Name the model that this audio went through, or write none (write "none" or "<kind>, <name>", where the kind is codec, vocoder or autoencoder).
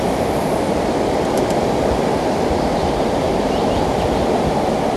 none